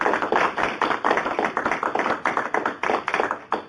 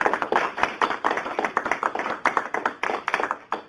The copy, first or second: second